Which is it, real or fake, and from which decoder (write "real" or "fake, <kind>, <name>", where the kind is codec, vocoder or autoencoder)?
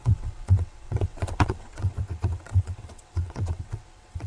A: fake, vocoder, WaveNeXt